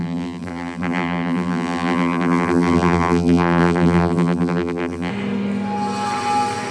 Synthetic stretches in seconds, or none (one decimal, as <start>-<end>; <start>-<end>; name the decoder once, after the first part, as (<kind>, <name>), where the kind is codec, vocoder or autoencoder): 0.0-5.1 (vocoder, BigVGAN v2)